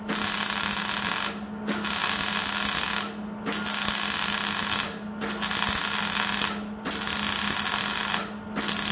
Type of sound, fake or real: real